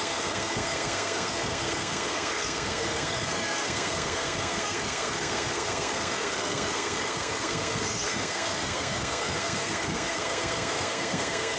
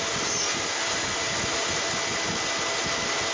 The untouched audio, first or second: second